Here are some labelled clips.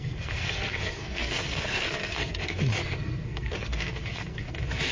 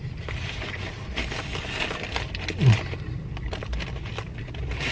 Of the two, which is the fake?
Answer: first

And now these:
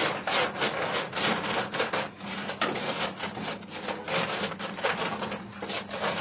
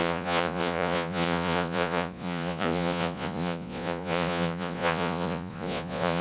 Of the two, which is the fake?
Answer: second